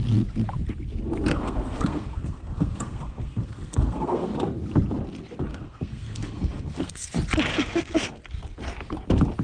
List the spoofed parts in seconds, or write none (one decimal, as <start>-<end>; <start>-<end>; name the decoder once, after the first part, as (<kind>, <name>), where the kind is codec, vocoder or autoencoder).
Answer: 1.3-4.3 (codec, SNAC); 5.5-7.1; 7.5-8.2